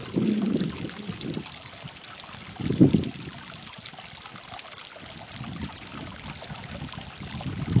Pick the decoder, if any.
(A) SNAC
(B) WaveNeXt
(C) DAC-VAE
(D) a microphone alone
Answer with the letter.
D